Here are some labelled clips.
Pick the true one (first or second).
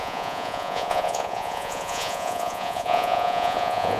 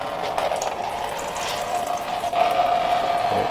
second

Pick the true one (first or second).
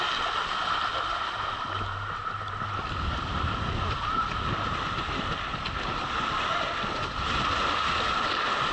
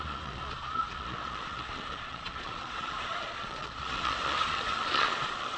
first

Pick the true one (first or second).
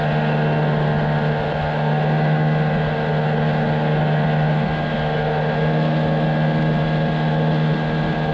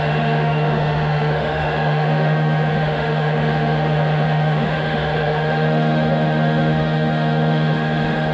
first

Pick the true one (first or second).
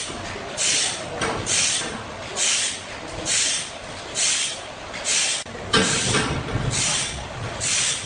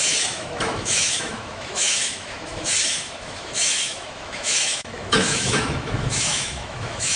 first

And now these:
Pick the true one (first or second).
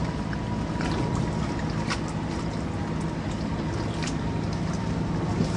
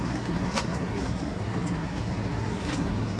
first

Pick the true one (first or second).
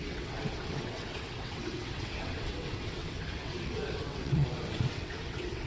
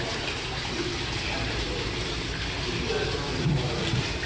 second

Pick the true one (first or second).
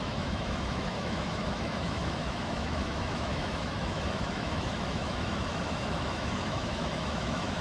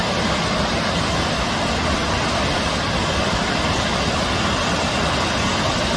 second